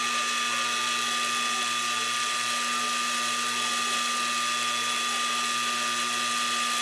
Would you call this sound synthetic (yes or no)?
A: no